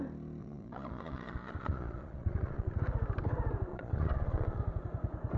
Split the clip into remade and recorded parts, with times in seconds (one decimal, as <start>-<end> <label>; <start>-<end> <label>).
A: 0.0-0.4 recorded; 0.4-2.8 remade; 2.8-3.7 recorded; 3.7-4.6 remade; 4.6-5.4 recorded